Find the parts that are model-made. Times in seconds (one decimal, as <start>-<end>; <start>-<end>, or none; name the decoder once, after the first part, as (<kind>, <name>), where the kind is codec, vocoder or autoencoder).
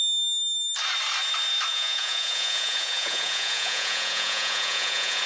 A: 1.7-5.3 (vocoder, Vocos)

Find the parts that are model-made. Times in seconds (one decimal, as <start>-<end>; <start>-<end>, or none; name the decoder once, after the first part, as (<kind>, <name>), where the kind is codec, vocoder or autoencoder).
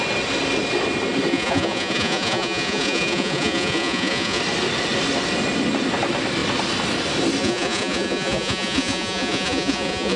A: 1.3-4.4 (vocoder, Vocos); 7.4-10.2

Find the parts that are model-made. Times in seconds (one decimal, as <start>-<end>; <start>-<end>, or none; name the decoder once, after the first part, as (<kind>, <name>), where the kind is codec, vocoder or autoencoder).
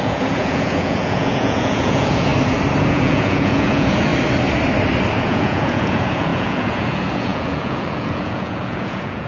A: 0.0-2.3 (vocoder, Vocos); 2.8-4.1; 5.2-9.3